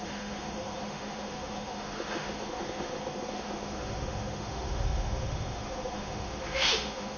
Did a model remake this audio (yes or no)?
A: yes